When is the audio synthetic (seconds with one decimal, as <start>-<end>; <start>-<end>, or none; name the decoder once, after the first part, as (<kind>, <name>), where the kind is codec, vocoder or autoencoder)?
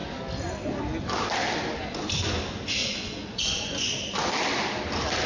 2.8-3.9 (vocoder, Vocos)